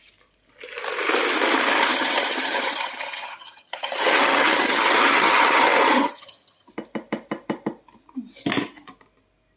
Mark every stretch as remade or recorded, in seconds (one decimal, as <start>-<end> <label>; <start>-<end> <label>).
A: 0.0-1.9 recorded; 1.9-6.7 remade; 6.7-9.6 recorded